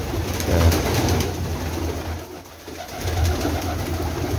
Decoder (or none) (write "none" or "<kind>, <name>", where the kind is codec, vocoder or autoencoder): none